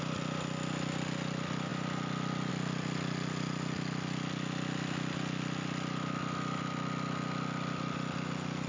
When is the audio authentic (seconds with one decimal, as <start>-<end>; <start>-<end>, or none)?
0.0-8.7